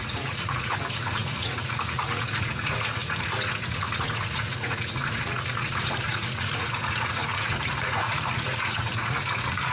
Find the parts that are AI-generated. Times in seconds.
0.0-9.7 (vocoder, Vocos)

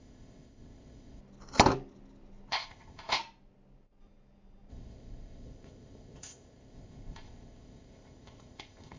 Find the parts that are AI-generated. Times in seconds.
0.0-1.2 (codec, ZipCodec); 2.5-3.2; 4.7-9.0

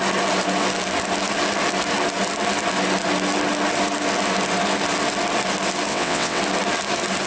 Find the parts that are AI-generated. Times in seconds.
5.9-6.4 (vocoder, WaveNeXt)

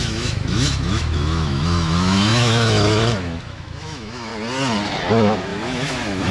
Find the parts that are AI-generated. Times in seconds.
0.0-4.3 (autoencoder, DAC-VAE); 5.1-6.3